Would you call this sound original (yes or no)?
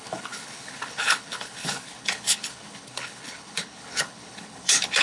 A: no